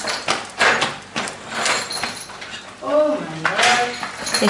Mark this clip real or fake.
real